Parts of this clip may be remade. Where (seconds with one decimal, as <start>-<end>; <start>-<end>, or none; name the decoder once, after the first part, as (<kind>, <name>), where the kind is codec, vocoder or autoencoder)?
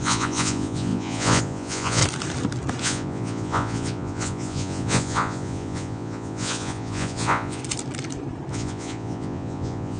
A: 0.0-2.0 (vocoder, Vocos); 2.8-7.6; 8.5-10.0